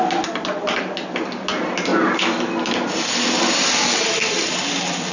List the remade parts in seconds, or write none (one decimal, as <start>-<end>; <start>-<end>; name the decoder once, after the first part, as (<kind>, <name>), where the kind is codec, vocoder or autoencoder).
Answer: none